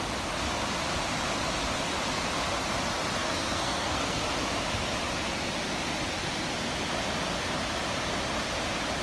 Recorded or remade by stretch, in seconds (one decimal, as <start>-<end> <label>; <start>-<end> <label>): 0.0-3.2 recorded; 3.2-4.2 remade; 4.2-9.0 recorded